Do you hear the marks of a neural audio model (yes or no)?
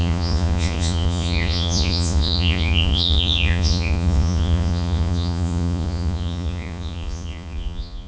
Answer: yes